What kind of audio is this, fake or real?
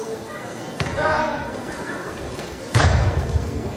fake